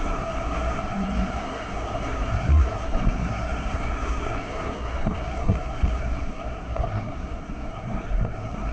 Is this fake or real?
fake